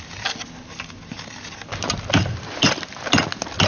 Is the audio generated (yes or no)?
no